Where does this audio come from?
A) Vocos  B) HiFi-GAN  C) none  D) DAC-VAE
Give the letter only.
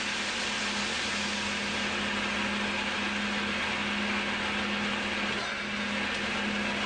C